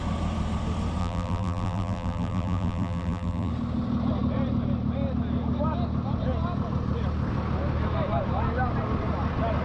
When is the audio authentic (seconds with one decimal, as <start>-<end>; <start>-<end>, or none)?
0.0-1.0; 3.5-9.6